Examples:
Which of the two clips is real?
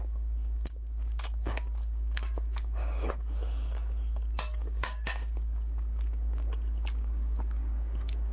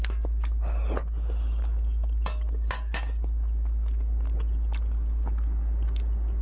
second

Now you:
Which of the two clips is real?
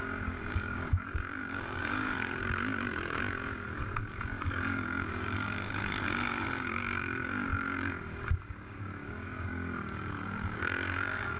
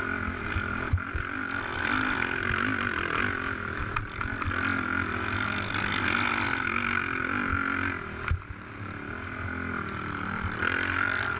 second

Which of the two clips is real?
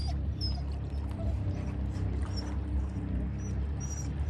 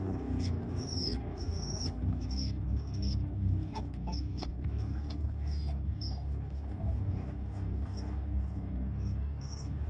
first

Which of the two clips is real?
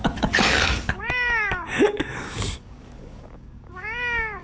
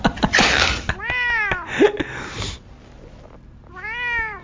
second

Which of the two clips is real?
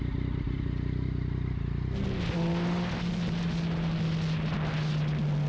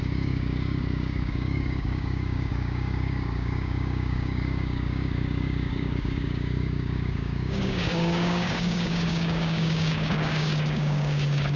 first